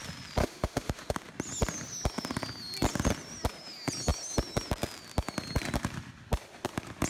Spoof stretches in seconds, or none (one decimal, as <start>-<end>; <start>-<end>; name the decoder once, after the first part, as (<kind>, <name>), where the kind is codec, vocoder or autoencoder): 0.4-1.3 (autoencoder, DAC-VAE)